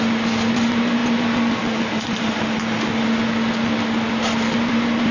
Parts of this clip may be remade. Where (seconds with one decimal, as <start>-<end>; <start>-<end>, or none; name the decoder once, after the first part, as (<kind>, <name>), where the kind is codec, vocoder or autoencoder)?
none